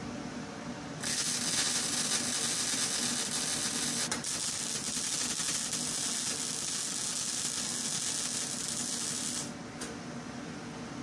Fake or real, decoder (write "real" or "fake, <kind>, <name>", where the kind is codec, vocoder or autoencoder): real